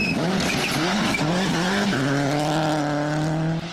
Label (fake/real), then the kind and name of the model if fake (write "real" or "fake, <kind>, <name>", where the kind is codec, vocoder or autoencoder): real